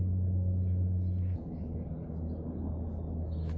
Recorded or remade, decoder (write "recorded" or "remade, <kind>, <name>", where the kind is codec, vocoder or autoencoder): recorded